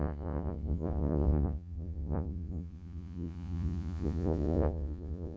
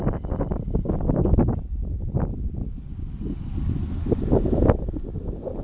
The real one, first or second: second